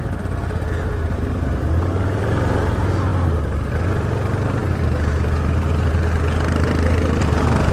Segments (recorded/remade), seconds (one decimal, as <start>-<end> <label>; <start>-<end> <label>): 0.0-7.7 recorded